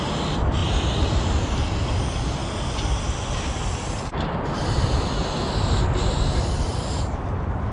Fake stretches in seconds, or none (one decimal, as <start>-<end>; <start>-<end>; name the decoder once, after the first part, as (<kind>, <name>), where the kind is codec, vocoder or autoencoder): none

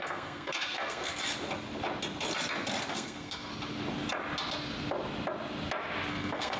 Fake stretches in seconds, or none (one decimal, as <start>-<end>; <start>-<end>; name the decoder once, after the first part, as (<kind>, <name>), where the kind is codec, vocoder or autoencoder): 0.0-1.1 (codec, SNAC); 2.9-3.5; 6.1-6.6

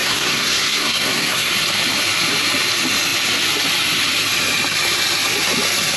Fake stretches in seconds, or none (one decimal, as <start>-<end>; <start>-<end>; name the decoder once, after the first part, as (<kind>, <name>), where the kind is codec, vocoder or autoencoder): 0.0-1.5 (codec, SNAC)